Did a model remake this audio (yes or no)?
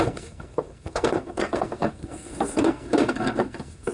yes